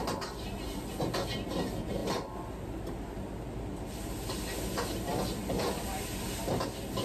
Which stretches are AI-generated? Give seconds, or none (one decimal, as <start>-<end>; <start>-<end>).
none